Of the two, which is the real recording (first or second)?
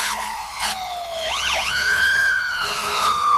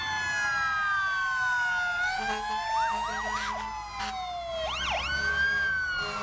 second